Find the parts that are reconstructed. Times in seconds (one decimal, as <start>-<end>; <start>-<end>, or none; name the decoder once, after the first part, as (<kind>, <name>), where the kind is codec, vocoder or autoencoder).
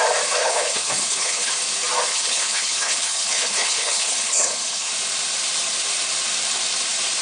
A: 0.4-1.5 (codec, HILCodec); 2.1-4.9